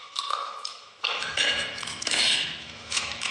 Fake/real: fake